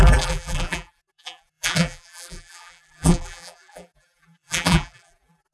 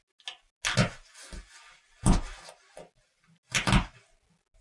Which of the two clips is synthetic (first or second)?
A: first